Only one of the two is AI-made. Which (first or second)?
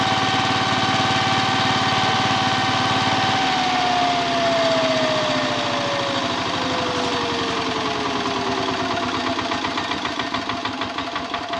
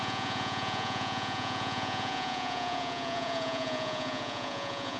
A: second